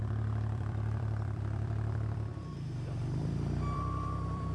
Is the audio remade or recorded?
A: remade